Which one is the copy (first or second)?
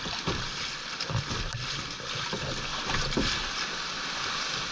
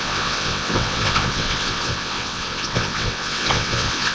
second